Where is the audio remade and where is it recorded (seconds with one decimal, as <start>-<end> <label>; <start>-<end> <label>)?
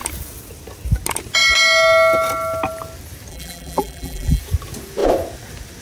0.0-3.3 recorded; 3.3-4.4 remade; 4.4-5.8 recorded